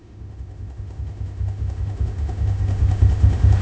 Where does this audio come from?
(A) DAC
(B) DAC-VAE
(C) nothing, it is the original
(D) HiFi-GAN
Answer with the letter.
B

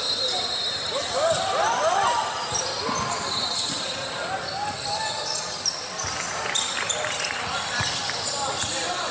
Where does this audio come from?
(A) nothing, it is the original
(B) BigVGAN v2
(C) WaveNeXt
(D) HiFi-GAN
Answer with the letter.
A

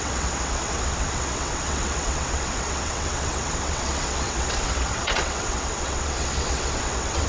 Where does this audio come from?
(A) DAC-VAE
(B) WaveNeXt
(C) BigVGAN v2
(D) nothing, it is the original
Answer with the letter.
B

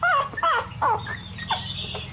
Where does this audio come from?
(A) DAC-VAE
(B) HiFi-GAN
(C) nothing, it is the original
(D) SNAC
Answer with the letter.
C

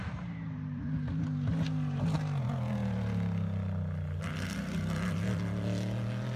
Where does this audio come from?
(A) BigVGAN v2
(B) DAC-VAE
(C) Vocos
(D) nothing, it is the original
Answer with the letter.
D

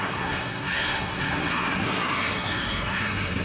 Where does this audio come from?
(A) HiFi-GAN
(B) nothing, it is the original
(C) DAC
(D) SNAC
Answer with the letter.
D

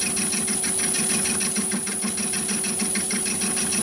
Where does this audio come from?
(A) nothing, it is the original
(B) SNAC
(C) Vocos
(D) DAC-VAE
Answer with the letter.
A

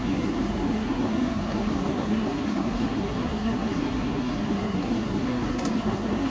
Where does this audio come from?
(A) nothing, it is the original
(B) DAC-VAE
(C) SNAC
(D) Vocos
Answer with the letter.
C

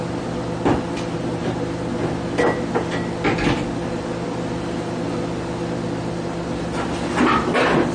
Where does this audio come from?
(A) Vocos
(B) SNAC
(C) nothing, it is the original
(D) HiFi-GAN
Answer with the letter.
C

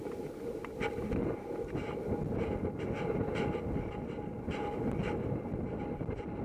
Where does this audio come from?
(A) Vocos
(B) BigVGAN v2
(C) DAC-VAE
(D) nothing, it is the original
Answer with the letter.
D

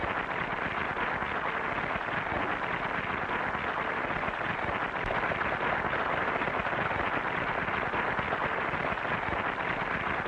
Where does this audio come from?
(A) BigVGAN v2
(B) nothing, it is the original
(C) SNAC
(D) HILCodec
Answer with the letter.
B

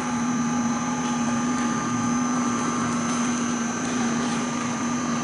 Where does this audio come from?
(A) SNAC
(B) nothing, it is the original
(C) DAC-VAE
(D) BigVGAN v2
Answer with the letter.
D